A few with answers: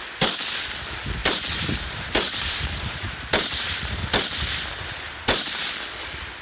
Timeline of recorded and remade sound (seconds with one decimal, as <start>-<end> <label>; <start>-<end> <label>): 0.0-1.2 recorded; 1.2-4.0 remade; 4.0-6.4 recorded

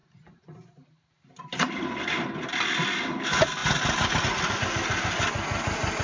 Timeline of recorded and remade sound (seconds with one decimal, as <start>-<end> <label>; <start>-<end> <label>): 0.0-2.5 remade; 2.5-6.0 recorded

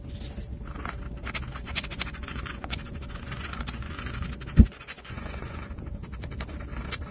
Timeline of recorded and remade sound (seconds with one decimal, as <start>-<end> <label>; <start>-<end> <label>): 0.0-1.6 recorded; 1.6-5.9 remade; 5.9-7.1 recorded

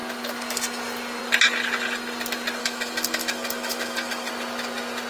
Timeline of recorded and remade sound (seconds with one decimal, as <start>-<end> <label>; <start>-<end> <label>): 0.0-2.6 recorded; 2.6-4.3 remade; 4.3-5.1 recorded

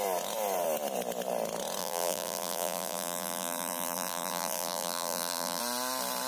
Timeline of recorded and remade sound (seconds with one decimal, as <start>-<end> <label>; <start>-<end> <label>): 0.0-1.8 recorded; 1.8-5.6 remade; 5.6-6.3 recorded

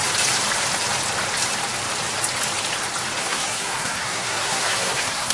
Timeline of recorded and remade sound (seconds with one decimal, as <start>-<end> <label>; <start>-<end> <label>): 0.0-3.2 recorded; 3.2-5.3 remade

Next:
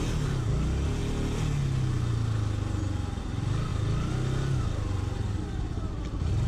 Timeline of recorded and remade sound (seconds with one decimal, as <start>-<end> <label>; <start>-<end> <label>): 0.0-6.5 recorded

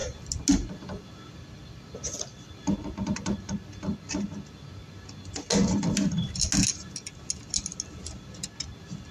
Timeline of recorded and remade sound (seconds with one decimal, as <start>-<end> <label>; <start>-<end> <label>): 0.0-9.1 recorded